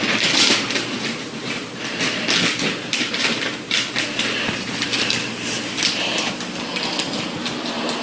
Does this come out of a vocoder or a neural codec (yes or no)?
yes